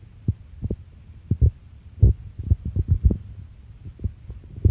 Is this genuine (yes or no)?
yes